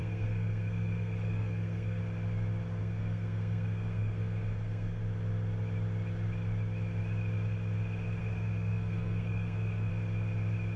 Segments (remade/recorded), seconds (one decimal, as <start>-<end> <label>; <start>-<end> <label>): 0.0-2.0 remade; 2.0-2.8 recorded; 2.8-5.0 remade; 5.0-8.2 recorded; 8.2-9.9 remade; 9.9-10.8 recorded